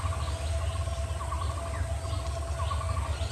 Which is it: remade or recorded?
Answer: recorded